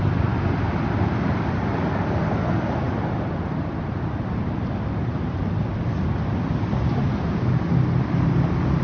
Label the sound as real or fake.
real